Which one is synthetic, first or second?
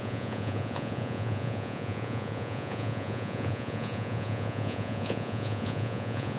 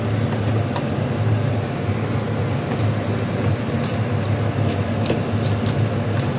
first